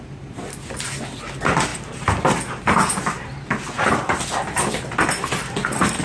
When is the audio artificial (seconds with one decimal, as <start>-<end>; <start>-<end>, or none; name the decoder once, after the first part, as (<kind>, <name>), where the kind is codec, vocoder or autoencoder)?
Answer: none